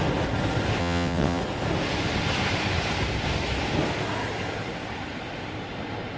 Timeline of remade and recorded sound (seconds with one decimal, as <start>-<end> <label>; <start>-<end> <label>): 0.0-0.8 recorded; 0.8-1.4 remade; 1.4-6.2 recorded